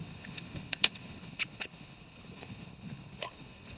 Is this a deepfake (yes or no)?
yes